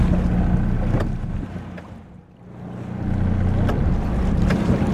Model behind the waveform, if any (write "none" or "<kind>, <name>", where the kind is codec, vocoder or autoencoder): none